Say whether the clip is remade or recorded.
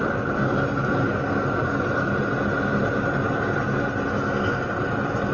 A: recorded